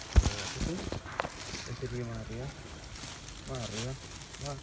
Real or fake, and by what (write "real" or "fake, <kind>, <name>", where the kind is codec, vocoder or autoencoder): real